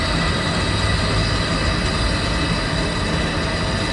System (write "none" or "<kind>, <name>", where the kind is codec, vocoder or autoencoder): none